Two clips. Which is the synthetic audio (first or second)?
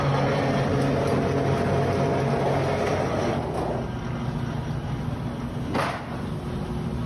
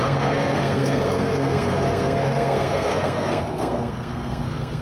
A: second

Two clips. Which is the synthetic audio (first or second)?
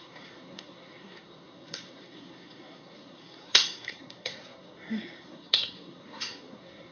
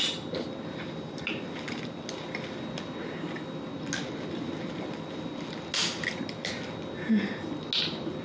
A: first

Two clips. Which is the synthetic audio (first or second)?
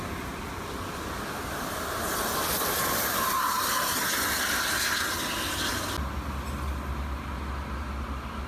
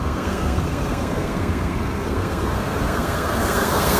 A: second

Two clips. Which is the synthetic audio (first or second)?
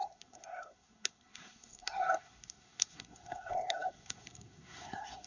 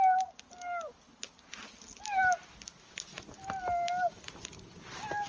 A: first